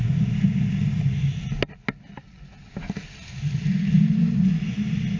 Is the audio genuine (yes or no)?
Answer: yes